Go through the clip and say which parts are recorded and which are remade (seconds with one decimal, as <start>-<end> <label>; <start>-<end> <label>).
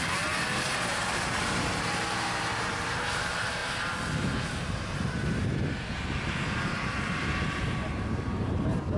0.0-9.0 remade